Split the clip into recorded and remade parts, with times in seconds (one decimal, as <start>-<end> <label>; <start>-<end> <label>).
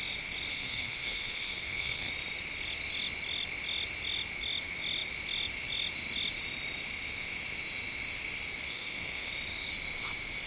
0.0-0.5 recorded; 0.5-2.1 remade; 2.1-8.7 recorded; 8.7-9.3 remade; 9.3-10.5 recorded